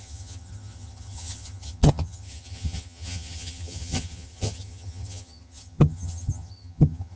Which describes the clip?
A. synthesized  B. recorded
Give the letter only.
A